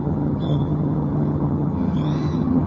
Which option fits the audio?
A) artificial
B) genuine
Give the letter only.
A